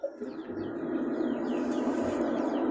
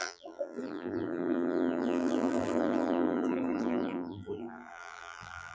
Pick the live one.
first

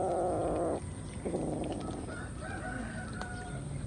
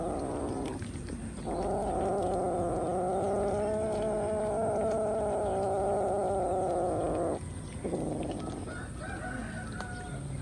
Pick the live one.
second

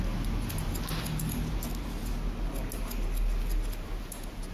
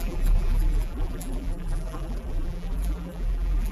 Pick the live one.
first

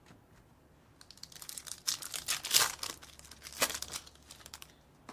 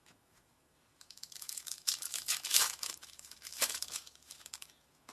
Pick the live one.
first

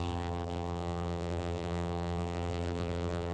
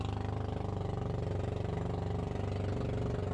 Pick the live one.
second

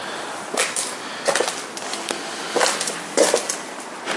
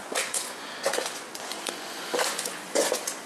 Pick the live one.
first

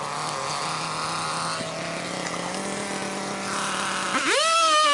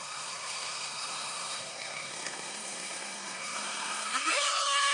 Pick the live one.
first